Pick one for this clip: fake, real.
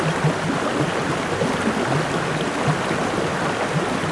real